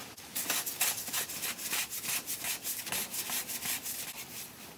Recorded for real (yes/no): yes